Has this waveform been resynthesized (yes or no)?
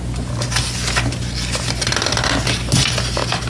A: no